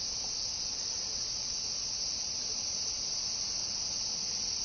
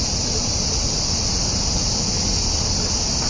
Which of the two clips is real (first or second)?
second